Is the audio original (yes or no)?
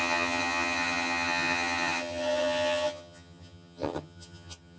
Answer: no